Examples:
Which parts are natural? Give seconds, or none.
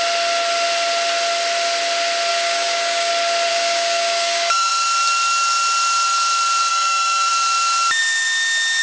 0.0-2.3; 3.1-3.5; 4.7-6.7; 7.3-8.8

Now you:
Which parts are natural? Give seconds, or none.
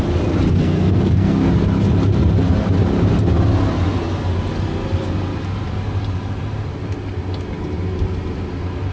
0.0-0.6; 1.5-8.9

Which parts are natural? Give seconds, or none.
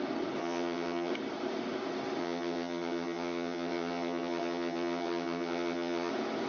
0.0-0.4; 1.1-2.2; 6.1-6.5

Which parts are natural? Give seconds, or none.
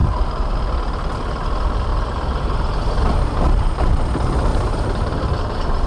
0.6-1.9; 3.8-4.5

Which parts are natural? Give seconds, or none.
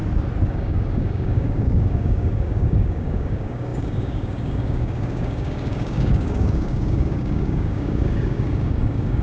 0.0-0.5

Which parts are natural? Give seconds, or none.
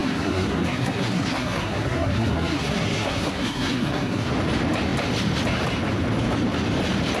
4.3-7.2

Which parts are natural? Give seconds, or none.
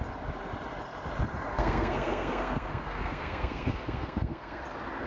0.0-1.5; 4.6-5.1